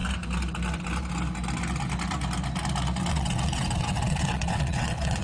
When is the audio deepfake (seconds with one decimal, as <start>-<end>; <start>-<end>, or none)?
3.1-5.2